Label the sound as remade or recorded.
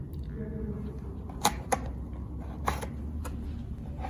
recorded